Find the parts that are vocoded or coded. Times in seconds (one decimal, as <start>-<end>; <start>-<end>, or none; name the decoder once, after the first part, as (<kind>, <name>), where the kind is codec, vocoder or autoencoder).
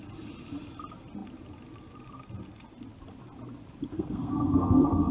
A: 3.9-5.1 (codec, SNAC)